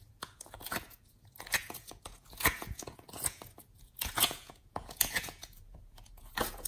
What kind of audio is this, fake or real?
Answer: fake